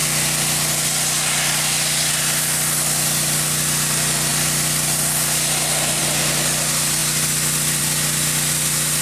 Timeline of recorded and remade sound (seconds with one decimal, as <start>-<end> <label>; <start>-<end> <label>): 0.0-9.0 recorded